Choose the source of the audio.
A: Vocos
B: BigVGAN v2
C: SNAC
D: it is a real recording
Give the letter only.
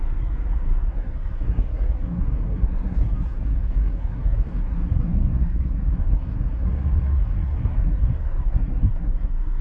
C